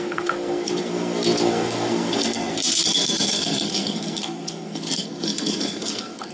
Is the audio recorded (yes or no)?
no